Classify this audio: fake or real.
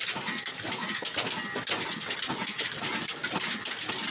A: real